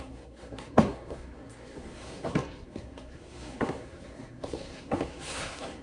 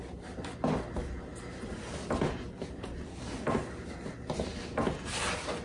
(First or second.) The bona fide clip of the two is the second